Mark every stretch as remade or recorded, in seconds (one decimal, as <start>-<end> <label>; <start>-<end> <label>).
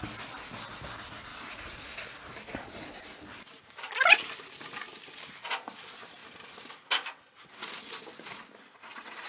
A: 0.0-1.3 recorded; 1.3-2.9 remade; 2.9-9.3 recorded